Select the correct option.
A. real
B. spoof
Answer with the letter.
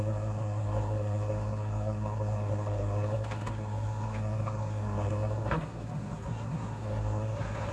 B